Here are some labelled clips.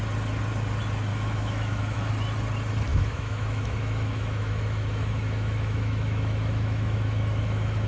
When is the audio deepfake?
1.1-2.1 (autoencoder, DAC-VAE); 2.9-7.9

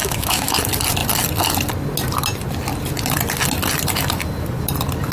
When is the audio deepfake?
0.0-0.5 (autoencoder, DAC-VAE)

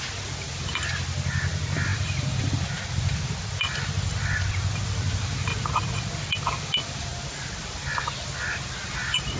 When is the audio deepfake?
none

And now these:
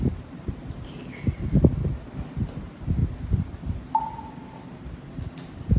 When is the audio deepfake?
none